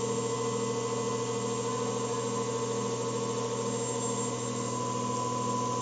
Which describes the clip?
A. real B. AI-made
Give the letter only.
A